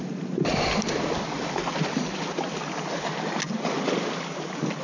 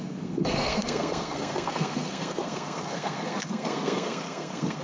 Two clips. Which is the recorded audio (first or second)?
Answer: first